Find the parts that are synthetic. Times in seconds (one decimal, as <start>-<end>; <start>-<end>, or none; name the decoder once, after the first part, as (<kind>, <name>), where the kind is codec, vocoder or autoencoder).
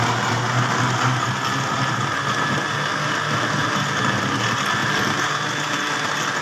none